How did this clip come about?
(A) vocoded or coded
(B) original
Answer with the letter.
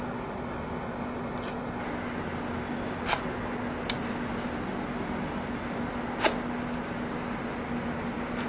B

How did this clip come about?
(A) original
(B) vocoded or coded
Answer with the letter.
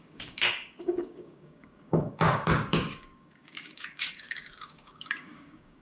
B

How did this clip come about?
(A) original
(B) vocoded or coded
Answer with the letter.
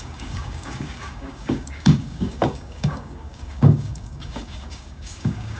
B